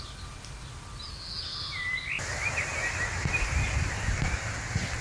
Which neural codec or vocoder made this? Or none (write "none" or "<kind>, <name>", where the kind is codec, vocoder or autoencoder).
none